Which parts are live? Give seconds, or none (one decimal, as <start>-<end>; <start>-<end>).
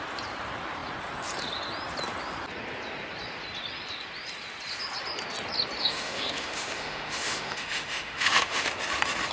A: 0.0-5.8; 8.7-9.3